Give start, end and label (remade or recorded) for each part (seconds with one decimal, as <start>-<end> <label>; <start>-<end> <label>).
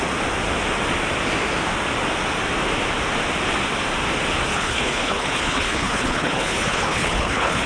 0.0-4.5 recorded; 4.5-7.7 remade